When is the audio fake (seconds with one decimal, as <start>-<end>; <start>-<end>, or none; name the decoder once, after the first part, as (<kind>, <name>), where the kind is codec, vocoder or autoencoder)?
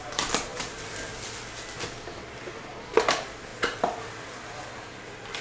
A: none